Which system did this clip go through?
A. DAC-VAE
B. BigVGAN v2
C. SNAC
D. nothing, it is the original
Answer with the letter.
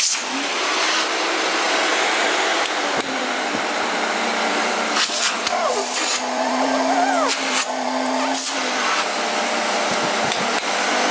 B